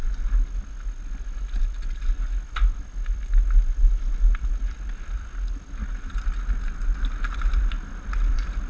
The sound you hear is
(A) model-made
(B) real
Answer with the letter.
B